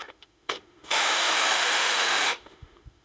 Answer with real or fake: fake